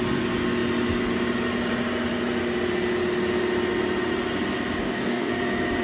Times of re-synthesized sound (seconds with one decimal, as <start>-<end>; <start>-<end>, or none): 4.8-5.3